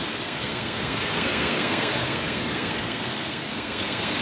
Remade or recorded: remade